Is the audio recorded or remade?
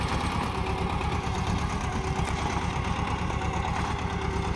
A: recorded